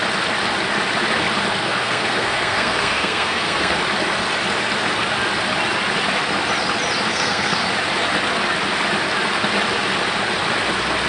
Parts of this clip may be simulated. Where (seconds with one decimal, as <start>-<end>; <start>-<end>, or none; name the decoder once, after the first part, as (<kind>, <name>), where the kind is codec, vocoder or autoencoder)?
1.6-3.8 (codec, SNAC); 7.1-7.6